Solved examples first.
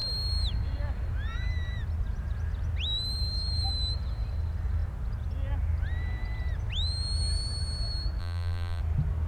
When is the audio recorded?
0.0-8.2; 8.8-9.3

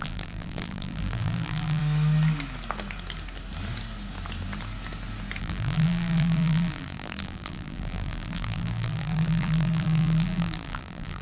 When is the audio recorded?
1.8-5.4